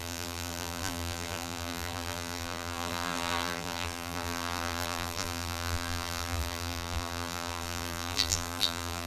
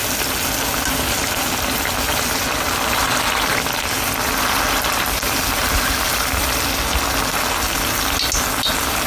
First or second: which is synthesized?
first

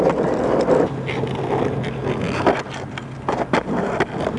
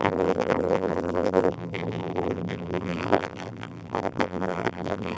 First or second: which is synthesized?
second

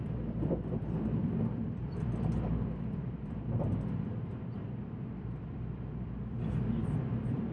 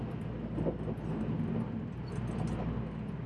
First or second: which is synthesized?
first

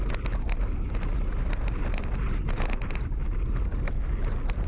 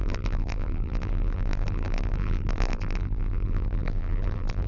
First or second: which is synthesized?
second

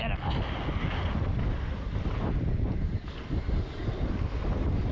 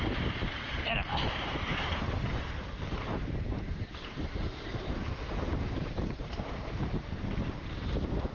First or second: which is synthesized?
second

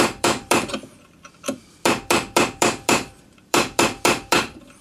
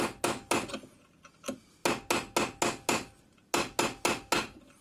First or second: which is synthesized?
first